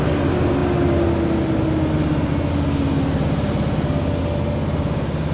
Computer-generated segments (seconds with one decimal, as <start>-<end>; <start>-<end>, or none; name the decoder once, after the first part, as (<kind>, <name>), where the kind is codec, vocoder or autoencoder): none

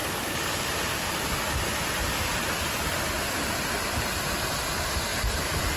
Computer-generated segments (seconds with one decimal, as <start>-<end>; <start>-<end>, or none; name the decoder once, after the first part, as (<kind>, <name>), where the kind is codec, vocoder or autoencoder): 0.0-3.5 (vocoder, BigVGAN v2)

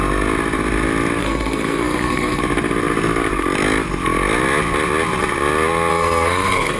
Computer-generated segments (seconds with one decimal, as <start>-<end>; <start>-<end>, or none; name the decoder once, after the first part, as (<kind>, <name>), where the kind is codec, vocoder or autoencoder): 1.2-2.4 (codec, SNAC); 5.9-6.8